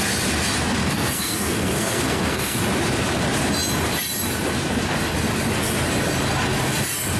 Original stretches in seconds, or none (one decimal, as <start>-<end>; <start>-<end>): 0.0-0.8; 2.6-7.2